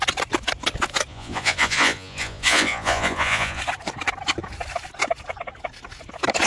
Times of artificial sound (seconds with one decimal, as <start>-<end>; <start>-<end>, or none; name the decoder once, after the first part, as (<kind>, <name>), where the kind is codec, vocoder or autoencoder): 1.1-3.6 (vocoder, Vocos)